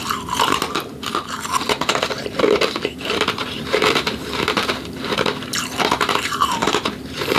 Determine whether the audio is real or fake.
fake